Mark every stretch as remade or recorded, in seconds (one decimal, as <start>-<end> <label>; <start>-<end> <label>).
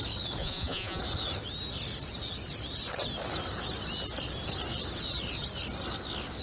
0.0-0.4 recorded; 0.4-1.0 remade; 1.0-6.4 recorded